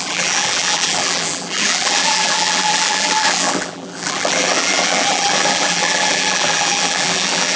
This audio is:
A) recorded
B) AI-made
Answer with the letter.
B